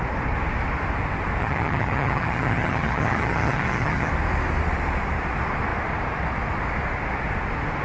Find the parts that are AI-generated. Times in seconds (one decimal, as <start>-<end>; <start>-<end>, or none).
1.4-4.1